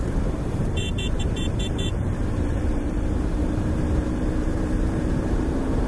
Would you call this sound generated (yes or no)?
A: yes